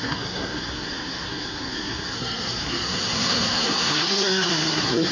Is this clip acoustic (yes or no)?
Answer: no